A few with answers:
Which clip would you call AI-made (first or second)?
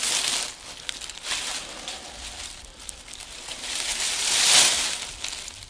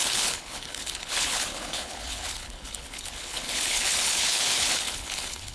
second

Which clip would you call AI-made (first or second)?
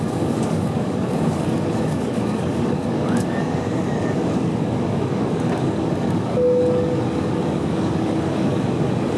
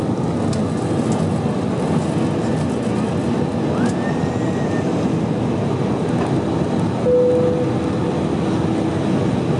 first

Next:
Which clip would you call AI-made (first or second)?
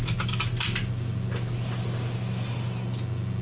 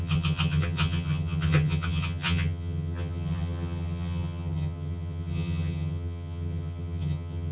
second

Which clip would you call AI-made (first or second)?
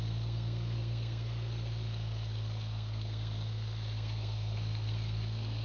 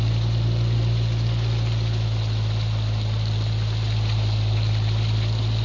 first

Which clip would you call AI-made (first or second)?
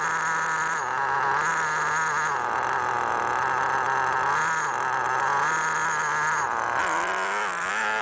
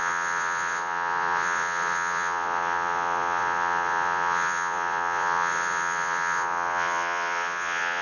second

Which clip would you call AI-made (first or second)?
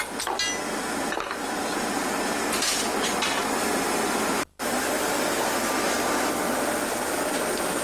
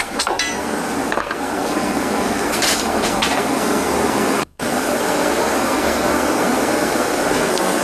second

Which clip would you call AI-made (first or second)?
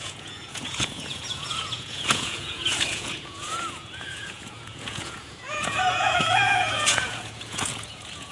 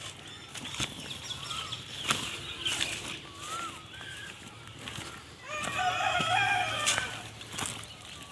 first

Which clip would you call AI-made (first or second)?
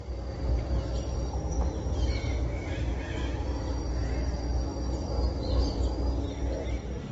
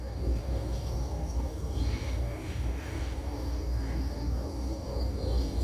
second